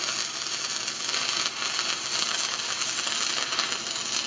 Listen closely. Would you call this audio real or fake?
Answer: real